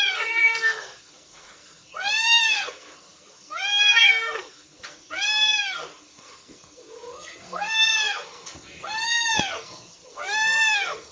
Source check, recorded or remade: remade